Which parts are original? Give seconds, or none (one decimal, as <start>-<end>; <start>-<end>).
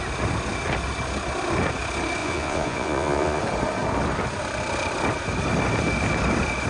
0.0-2.2; 3.4-6.7